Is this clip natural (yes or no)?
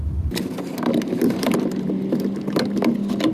yes